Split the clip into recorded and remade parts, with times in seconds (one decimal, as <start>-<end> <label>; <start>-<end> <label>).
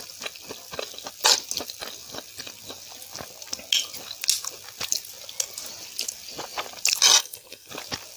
0.0-7.2 recorded; 7.2-7.7 remade; 7.7-8.2 recorded